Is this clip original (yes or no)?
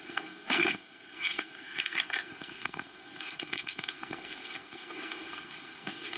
no